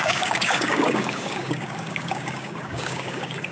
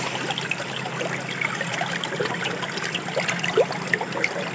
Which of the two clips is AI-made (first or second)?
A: first